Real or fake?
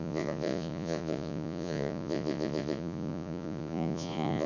fake